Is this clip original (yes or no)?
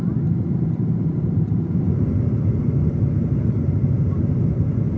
no